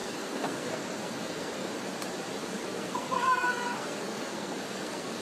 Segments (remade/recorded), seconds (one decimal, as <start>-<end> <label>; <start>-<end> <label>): 0.0-1.7 remade; 1.7-2.4 recorded; 2.4-5.2 remade